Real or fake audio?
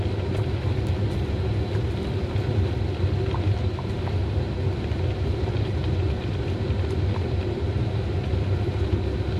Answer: real